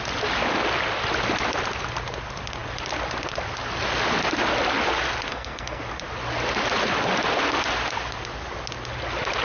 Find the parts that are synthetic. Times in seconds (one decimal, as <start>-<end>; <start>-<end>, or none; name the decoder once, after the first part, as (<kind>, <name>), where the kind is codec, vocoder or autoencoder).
5.3-5.8 (codec, SNAC)